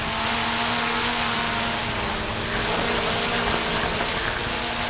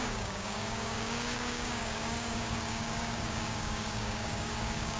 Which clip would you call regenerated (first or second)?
second